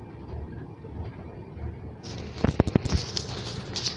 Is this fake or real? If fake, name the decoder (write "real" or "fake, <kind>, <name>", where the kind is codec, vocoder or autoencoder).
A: real